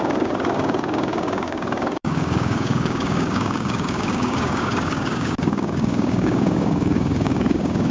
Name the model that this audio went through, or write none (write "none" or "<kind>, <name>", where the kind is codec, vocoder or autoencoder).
codec, DAC